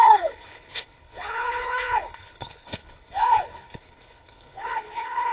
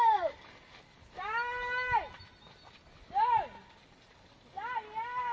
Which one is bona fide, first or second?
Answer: second